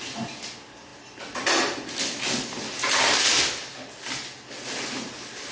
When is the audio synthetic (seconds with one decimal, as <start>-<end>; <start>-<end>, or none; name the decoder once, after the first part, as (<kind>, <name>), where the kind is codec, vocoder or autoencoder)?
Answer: none